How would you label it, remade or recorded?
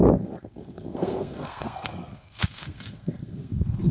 remade